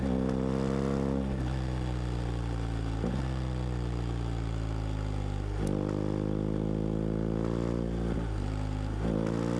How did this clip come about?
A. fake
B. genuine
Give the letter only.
B